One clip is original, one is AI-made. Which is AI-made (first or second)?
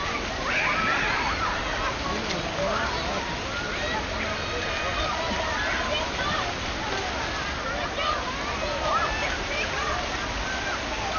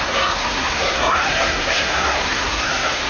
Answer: second